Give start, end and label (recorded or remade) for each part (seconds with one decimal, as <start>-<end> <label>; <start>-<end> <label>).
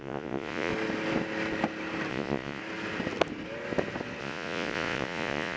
0.0-0.7 remade; 0.7-2.1 recorded; 2.1-2.6 remade; 2.6-4.2 recorded; 4.2-5.6 remade